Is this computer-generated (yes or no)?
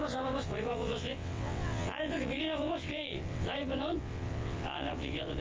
yes